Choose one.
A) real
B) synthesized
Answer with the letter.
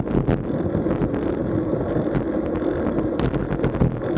A